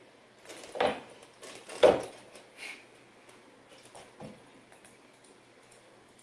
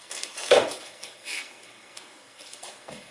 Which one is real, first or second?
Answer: first